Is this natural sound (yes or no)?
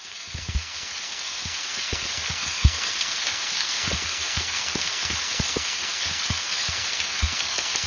no